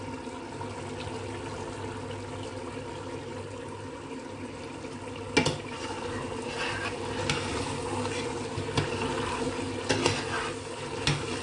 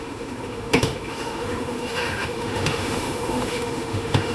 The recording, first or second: first